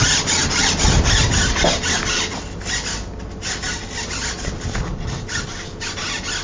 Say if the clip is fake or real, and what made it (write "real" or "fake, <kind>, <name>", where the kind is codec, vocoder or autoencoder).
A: real